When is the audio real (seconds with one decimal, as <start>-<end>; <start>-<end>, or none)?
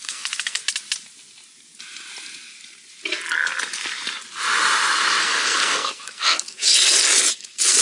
0.6-5.2; 6.7-7.3